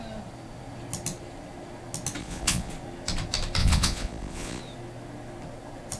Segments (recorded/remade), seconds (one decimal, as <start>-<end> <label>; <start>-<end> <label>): 0.0-2.2 recorded; 2.2-2.7 remade; 2.7-3.6 recorded; 3.6-4.6 remade; 4.6-6.0 recorded